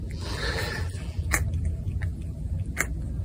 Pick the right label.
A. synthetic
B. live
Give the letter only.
A